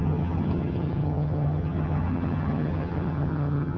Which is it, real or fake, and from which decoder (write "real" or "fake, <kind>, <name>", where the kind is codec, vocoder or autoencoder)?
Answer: fake, vocoder, HiFi-GAN